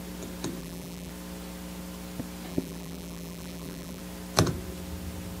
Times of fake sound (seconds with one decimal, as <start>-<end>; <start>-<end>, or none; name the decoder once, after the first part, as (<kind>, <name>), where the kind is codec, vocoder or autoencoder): 0.6-1.1 (vocoder, BigVGAN v2); 2.5-4.0